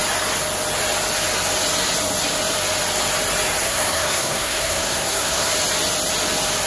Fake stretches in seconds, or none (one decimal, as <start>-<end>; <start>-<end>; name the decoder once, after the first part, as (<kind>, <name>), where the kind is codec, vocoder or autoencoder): 3.6-5.5 (codec, SNAC)